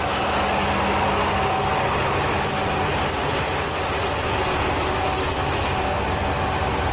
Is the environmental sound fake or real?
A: real